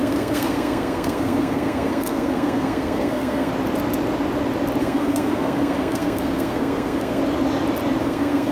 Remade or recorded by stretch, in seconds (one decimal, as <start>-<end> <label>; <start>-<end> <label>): 0.0-3.5 remade; 3.5-4.8 recorded; 4.8-7.2 remade; 7.2-8.0 recorded; 8.0-8.5 remade